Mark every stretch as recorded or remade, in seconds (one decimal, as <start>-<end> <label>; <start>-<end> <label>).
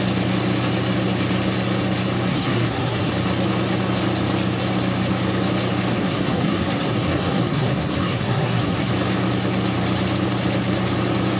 0.0-2.3 recorded; 2.3-3.1 remade; 3.1-5.9 recorded; 5.9-8.9 remade; 8.9-11.4 recorded